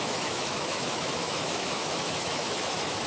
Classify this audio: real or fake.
fake